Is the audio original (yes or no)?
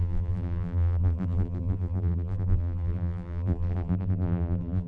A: no